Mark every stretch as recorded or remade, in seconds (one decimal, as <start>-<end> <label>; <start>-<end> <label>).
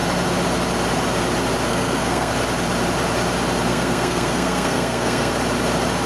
0.0-1.7 recorded; 1.7-2.3 remade; 2.3-3.7 recorded; 3.7-5.3 remade; 5.3-6.1 recorded